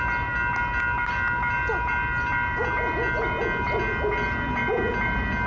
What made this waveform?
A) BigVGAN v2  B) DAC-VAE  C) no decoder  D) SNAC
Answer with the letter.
C